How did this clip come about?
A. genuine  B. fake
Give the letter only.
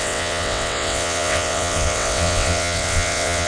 B